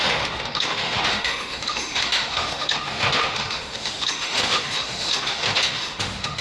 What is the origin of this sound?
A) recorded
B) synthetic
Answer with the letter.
B